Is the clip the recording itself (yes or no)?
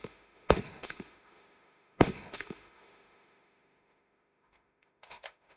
no